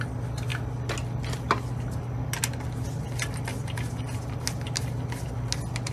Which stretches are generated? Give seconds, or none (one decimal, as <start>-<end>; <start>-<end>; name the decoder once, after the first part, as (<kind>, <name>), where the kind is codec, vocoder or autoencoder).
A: none